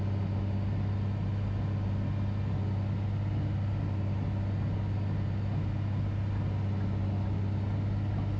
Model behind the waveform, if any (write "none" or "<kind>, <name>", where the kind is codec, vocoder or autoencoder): none